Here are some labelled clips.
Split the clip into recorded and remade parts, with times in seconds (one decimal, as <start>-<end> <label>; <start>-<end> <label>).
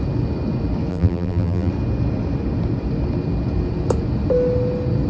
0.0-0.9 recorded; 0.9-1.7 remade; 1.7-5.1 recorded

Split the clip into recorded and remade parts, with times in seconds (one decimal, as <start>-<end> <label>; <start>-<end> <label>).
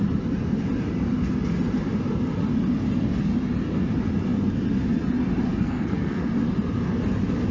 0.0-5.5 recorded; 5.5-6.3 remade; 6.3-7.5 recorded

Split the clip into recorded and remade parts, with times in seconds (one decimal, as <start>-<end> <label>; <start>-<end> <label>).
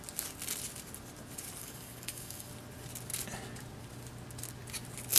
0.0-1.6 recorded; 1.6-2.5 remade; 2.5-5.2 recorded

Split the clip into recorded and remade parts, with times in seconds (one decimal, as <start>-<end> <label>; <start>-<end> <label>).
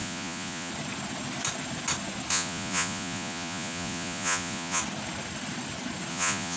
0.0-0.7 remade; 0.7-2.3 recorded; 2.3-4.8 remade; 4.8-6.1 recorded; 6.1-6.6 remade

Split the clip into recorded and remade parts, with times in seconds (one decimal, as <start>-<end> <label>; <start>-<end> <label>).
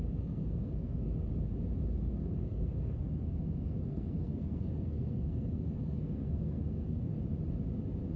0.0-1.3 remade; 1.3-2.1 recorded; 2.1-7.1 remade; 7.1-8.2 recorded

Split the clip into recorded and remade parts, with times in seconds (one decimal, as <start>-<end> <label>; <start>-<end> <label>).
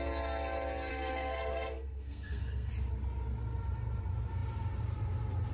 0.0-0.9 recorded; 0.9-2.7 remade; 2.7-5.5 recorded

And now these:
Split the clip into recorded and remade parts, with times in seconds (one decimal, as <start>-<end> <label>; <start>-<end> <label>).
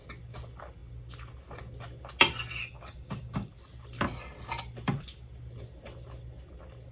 0.0-2.6 recorded; 2.6-3.5 remade; 3.5-6.9 recorded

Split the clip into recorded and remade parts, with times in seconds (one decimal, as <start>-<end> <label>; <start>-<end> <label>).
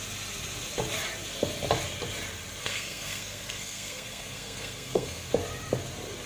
0.0-2.6 recorded; 2.6-5.3 remade; 5.3-6.3 recorded